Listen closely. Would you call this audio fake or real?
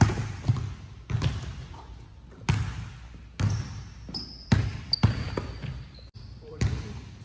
real